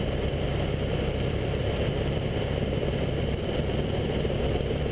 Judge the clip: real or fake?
fake